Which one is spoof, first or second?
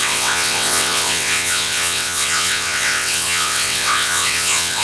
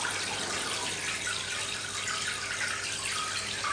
first